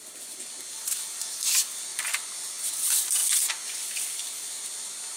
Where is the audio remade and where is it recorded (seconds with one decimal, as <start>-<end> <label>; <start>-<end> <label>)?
0.0-3.2 remade; 3.2-4.1 recorded; 4.1-5.2 remade